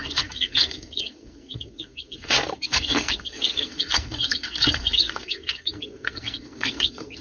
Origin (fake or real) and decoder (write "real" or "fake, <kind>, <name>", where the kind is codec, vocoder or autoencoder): fake, codec, SNAC